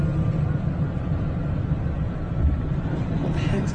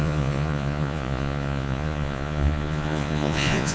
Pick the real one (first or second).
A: first